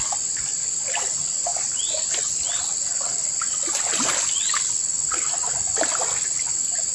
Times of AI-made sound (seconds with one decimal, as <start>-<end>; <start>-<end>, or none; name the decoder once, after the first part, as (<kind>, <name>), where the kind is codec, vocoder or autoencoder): none